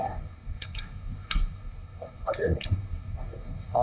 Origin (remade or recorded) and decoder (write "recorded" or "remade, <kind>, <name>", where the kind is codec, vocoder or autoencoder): remade, codec, SNAC